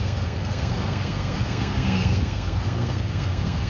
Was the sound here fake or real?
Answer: fake